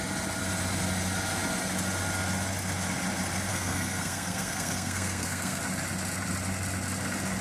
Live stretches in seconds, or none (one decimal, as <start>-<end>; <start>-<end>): 0.0-3.5; 5.6-7.4